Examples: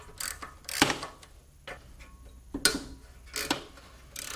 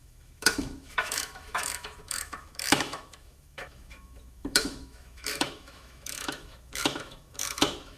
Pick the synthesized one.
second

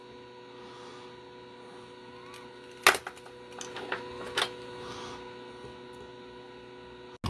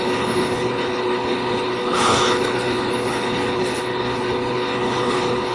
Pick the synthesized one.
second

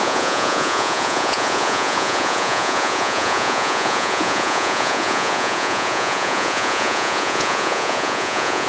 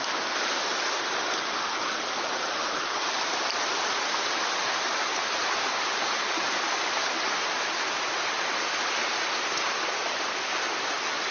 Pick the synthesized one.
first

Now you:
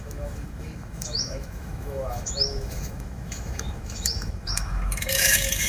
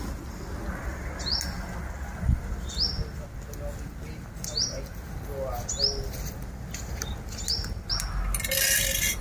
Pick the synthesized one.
first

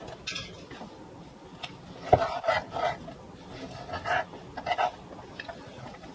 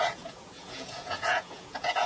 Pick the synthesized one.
second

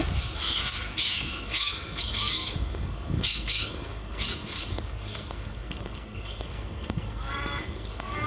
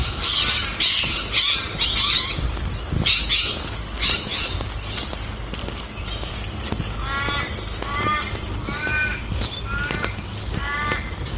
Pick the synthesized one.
first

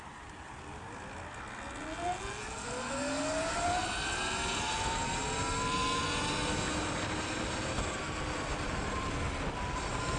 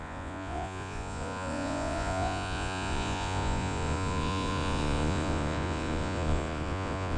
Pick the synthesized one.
second